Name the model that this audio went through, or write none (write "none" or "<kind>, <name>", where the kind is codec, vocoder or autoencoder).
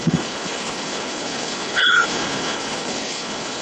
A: codec, HILCodec